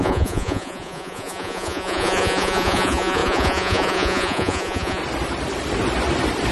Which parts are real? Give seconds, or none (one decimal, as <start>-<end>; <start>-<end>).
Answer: 5.0-6.5